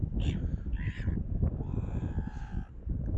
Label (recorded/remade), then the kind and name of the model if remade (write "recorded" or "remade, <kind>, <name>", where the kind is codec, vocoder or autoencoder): remade, vocoder, BigVGAN v2